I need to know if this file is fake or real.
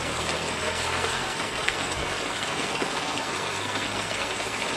fake